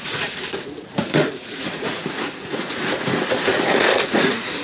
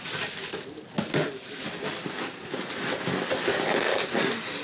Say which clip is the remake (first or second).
first